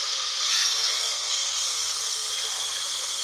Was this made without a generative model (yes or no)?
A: no